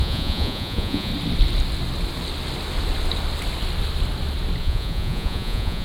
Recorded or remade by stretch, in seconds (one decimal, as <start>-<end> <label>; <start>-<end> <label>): 0.0-1.1 remade; 1.1-4.6 recorded; 4.6-5.8 remade